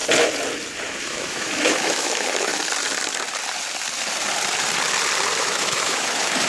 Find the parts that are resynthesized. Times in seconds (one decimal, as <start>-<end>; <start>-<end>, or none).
1.0-2.5; 5.4-6.5